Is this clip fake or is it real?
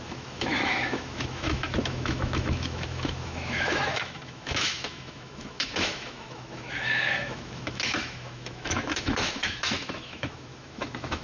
fake